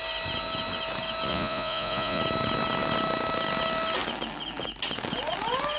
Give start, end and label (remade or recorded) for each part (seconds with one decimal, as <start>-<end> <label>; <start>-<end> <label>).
0.0-1.3 recorded; 1.3-2.2 remade; 2.2-5.8 recorded